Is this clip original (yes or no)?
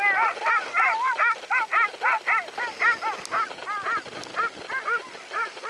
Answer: yes